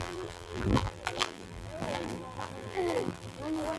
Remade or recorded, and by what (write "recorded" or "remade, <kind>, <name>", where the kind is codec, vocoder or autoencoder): remade, vocoder, BigVGAN v2